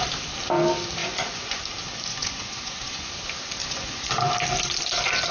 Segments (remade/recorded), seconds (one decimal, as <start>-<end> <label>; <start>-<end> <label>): 0.0-1.0 recorded; 1.0-1.6 remade; 1.6-2.1 recorded; 2.1-3.1 remade; 3.1-3.6 recorded; 3.6-4.1 remade; 4.1-5.3 recorded